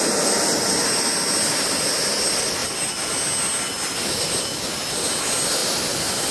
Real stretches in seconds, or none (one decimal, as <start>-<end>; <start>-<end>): 0.0-6.3